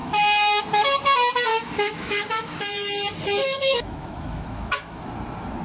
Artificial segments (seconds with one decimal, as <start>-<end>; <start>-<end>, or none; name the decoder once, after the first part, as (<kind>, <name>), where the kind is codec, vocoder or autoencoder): 0.0-0.6 (autoencoder, DAC-VAE); 1.5-2.6; 3.4-5.0